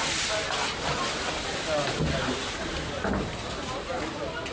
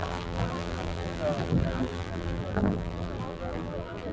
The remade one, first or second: second